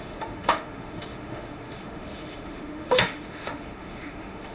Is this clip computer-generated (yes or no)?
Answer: yes